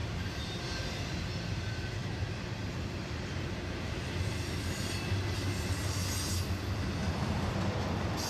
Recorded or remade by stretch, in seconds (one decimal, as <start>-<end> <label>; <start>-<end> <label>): 0.0-0.6 remade; 0.6-2.0 recorded; 2.0-4.9 remade; 4.9-8.3 recorded